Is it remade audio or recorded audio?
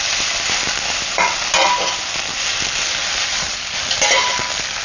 recorded